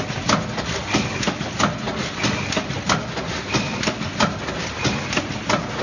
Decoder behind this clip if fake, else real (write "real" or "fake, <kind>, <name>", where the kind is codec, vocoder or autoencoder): real